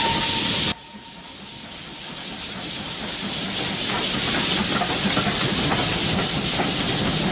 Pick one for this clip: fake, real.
real